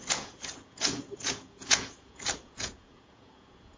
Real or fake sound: fake